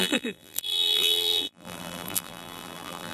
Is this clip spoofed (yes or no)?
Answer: yes